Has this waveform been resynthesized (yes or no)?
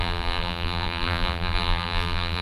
yes